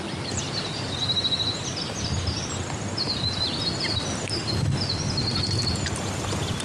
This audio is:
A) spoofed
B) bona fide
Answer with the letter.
B